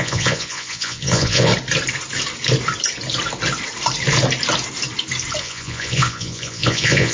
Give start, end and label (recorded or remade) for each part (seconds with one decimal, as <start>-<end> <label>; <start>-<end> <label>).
0.0-1.5 remade; 1.5-5.4 recorded; 5.4-7.1 remade